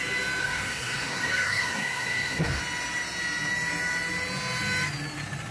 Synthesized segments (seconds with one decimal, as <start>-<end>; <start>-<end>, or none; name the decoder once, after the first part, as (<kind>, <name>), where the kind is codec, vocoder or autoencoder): 0.4-2.6 (codec, SNAC)